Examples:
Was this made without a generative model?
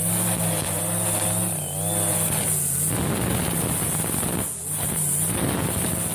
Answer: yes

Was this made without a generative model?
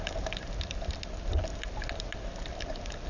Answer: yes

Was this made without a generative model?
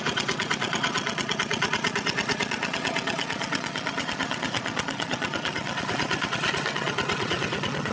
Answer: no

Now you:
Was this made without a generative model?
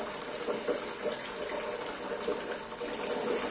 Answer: yes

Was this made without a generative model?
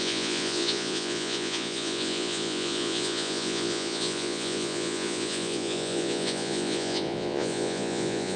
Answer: no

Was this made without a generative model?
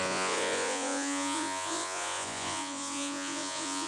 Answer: no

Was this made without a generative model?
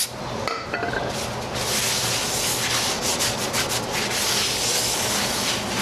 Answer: yes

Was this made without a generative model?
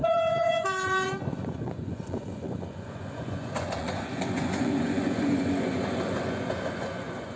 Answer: no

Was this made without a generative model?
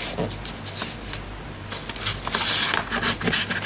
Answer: yes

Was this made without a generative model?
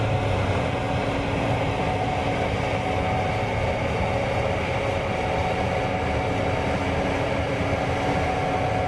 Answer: yes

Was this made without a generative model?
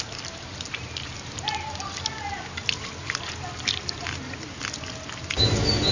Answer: yes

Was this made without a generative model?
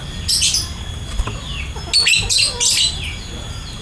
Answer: yes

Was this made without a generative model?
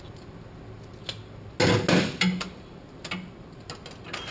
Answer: yes